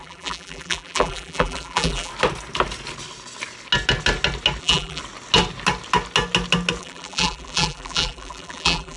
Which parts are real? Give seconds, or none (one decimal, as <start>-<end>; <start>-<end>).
2.1-4.6; 5.0-6.8